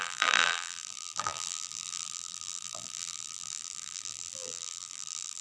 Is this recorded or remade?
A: remade